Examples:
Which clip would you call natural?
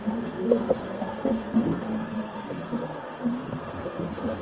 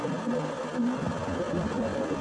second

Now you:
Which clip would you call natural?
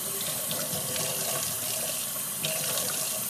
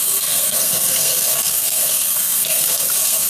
first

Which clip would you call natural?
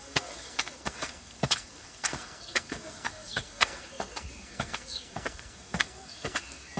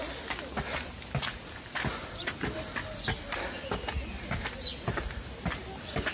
second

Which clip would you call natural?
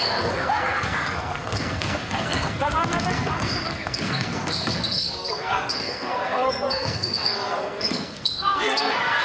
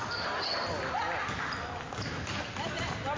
second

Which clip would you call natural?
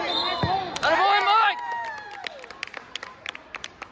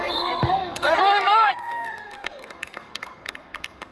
first